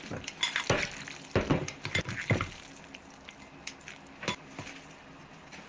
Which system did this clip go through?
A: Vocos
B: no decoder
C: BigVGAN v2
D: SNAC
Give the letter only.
B